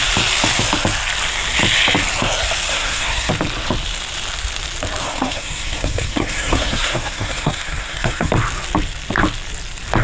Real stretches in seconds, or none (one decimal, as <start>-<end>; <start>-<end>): 0.0-2.7; 3.3-5.0; 8.3-10.0